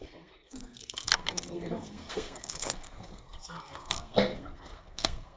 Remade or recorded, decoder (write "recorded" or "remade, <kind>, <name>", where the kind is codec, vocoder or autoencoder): remade, codec, SNAC